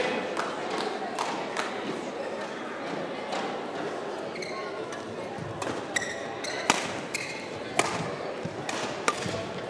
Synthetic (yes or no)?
no